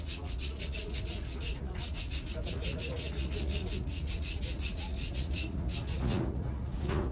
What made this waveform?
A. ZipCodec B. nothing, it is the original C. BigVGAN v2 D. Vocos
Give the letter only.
D